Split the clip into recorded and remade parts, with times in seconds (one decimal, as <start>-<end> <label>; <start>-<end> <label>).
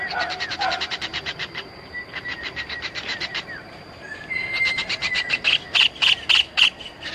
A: 0.0-1.1 recorded; 1.1-4.8 remade; 4.8-7.1 recorded